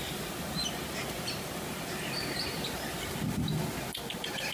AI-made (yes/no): no